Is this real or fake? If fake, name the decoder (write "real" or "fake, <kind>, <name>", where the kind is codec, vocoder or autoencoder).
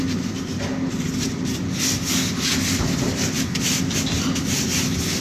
real